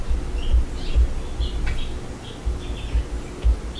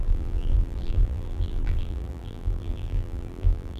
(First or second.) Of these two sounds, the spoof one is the second